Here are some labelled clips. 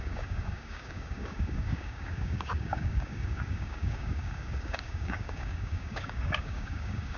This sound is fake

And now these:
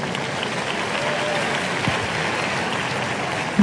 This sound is real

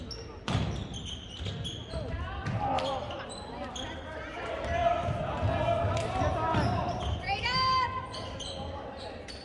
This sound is real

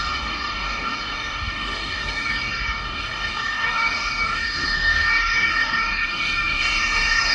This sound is fake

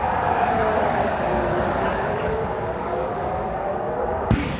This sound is fake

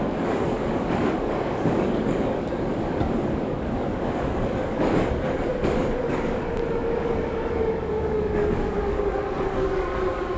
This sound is fake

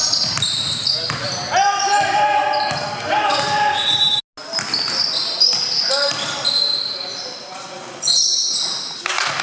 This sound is real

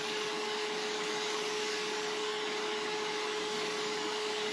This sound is fake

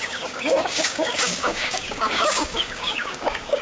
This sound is fake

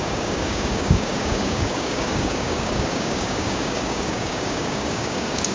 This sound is fake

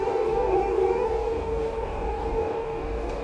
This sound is fake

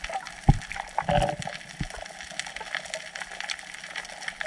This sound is real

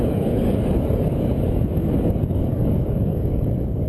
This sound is fake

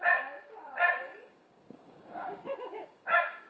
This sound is fake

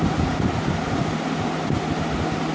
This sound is real